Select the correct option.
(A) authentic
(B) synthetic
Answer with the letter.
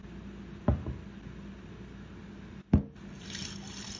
A